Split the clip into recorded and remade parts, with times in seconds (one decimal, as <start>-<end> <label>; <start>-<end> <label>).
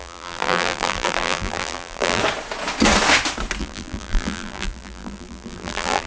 0.0-2.2 remade; 2.2-3.6 recorded; 3.6-6.1 remade